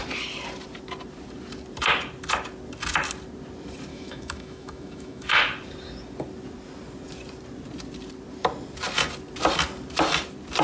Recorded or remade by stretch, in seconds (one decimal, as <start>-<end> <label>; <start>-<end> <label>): 0.0-3.9 recorded; 3.9-5.4 remade; 5.4-10.6 recorded

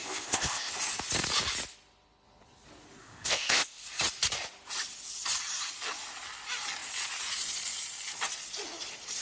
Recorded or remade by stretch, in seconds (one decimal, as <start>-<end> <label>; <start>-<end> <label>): 0.0-0.7 remade; 0.7-3.0 recorded; 3.0-3.8 remade; 3.8-9.2 recorded